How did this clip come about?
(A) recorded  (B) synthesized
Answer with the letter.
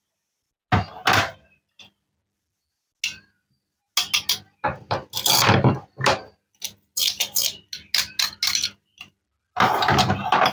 A